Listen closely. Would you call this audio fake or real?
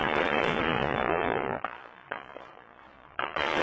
fake